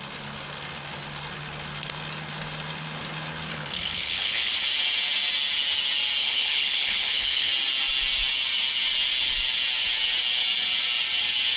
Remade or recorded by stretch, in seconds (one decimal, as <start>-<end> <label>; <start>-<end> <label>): 0.0-3.5 recorded; 3.5-4.5 remade; 4.5-6.2 recorded; 6.2-7.5 remade; 7.5-11.6 recorded